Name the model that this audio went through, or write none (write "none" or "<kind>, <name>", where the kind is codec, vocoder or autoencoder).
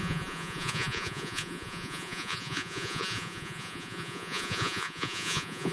vocoder, Vocos